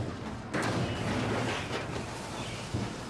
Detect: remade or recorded recorded